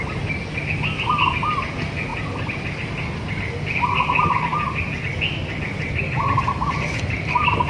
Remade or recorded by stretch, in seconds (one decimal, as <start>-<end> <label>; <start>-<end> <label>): 0.0-7.7 recorded